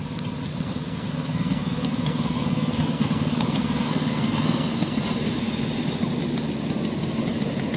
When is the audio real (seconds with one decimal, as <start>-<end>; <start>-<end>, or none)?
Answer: 0.0-0.5; 5.0-7.8